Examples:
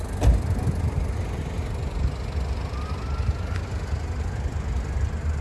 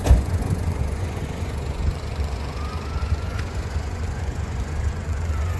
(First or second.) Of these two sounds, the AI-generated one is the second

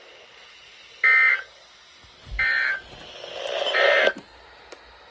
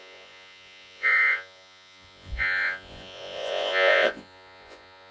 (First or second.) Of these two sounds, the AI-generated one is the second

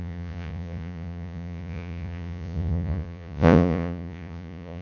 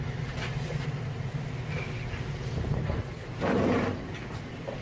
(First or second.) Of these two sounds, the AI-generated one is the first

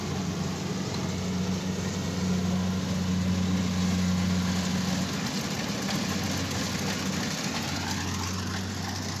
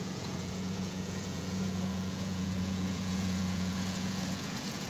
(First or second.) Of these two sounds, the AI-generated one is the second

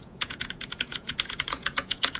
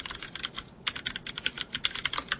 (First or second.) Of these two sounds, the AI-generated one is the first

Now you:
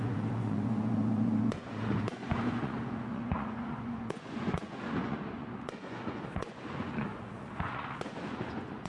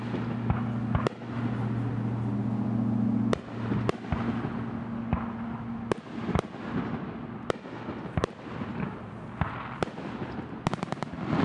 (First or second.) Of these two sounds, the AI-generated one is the first